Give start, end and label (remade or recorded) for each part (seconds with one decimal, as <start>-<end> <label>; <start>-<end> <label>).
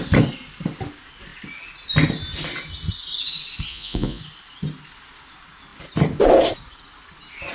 0.0-3.7 recorded; 3.7-4.2 remade; 4.2-7.5 recorded